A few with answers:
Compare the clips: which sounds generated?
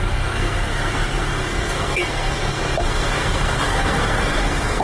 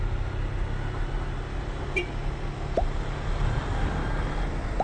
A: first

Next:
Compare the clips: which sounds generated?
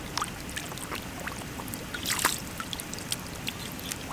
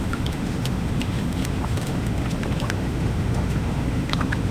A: second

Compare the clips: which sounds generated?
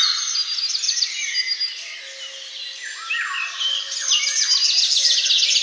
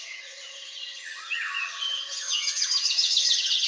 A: second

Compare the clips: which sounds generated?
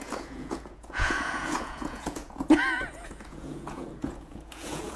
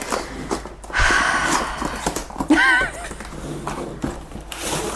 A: first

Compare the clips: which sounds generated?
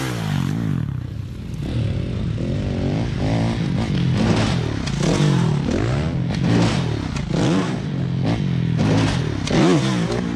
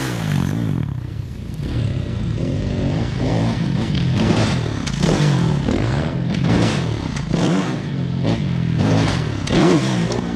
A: second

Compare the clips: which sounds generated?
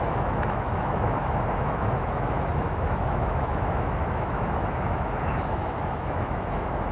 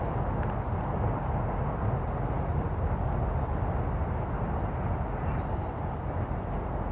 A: first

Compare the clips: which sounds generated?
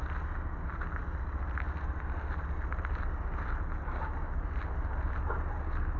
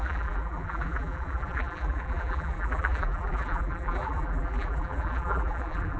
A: second